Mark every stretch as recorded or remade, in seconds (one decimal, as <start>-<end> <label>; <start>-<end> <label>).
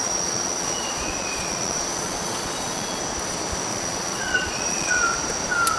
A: 0.0-3.0 remade; 3.0-3.7 recorded; 3.7-5.1 remade; 5.1-5.8 recorded